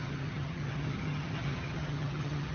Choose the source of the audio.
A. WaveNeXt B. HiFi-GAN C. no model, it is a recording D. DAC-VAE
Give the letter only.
B